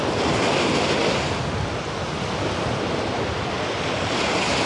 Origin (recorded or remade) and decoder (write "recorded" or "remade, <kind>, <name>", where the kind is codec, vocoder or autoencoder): recorded